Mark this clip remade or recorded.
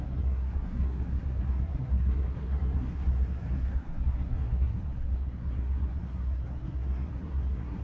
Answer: remade